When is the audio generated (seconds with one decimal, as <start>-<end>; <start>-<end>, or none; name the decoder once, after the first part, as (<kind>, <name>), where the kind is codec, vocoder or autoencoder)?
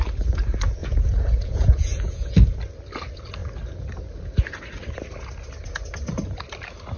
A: 0.8-2.5 (vocoder, Vocos)